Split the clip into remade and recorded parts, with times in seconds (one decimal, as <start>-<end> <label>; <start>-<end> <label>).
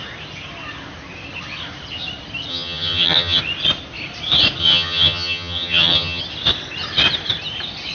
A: 0.0-2.5 recorded; 2.5-3.4 remade; 3.4-4.6 recorded; 4.6-6.2 remade; 6.2-7.9 recorded